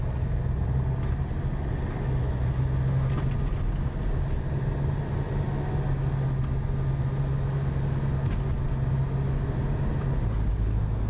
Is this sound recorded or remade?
recorded